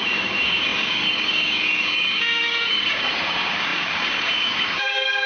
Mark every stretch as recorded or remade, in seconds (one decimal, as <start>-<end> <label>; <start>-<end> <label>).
0.0-5.3 remade

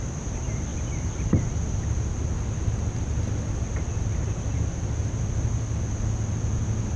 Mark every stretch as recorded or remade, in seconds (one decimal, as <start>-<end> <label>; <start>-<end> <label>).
0.0-7.0 recorded

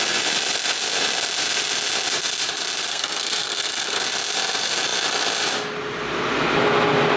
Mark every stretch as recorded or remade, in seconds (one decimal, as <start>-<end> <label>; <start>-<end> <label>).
0.0-2.9 recorded; 2.9-4.0 remade; 4.0-7.2 recorded

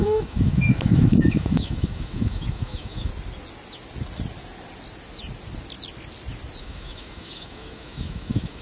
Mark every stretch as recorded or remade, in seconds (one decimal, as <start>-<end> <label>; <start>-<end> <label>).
0.0-3.1 remade; 3.1-6.6 recorded; 6.6-8.6 remade